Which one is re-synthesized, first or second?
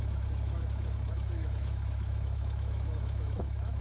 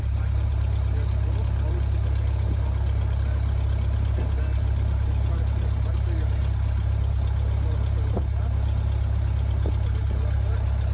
first